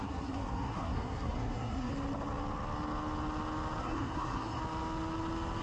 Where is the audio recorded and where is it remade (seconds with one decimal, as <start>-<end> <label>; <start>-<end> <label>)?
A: 0.0-1.9 remade; 1.9-3.8 recorded; 3.8-4.6 remade; 4.6-5.6 recorded